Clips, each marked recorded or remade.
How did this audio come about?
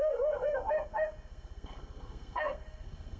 remade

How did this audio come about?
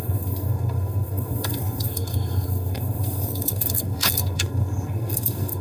remade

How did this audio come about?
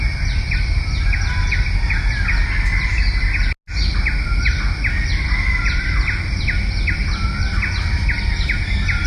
recorded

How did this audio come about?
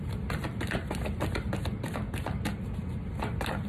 recorded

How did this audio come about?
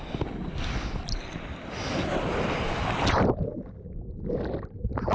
recorded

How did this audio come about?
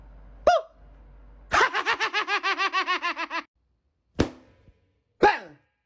recorded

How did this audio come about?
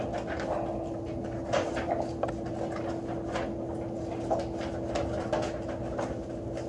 recorded